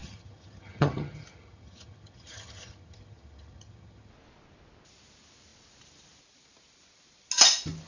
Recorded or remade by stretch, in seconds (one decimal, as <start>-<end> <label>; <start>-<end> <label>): 0.0-4.1 remade; 4.1-7.9 recorded